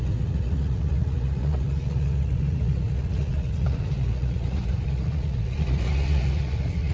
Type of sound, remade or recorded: remade